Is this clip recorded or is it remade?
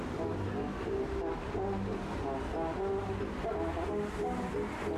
recorded